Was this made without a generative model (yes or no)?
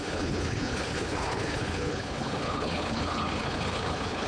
no